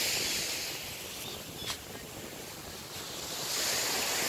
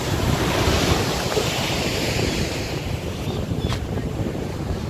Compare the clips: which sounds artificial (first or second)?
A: second